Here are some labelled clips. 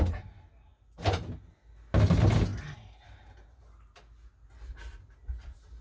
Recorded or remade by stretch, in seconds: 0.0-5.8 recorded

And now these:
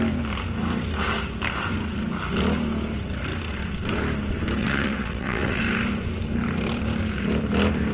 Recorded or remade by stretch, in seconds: 0.0-4.6 recorded; 4.6-5.6 remade; 5.6-7.9 recorded

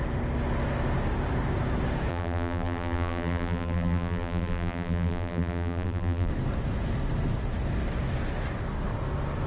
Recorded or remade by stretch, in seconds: 0.0-2.1 recorded; 2.1-6.3 remade; 6.3-9.5 recorded

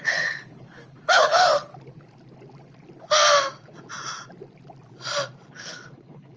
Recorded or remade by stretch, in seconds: 0.0-1.7 remade; 1.7-5.5 recorded; 5.5-6.4 remade

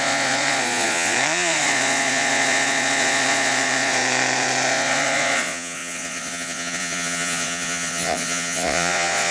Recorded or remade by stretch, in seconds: 0.0-9.3 remade

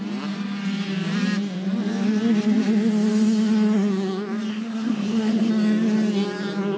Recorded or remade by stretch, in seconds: 0.0-4.5 recorded; 4.5-5.5 remade; 5.5-6.8 recorded

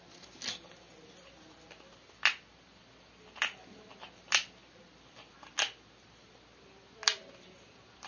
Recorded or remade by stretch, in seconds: 0.0-8.1 recorded

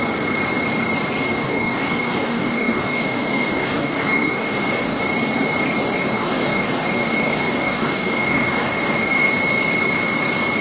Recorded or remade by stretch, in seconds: 0.0-1.3 recorded; 1.3-5.0 remade; 5.0-6.0 recorded; 6.0-9.3 remade; 9.3-10.6 recorded